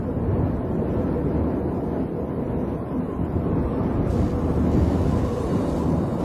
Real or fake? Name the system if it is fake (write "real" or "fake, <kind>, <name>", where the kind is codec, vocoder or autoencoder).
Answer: real